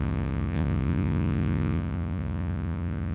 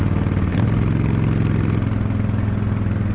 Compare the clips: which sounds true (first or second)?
second